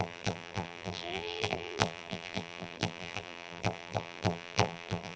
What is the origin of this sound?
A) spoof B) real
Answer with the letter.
A